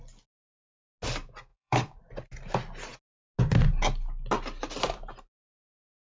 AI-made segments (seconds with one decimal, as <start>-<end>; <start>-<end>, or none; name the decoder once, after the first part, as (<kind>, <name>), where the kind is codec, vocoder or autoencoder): 1.5-2.0 (vocoder, BigVGAN v2)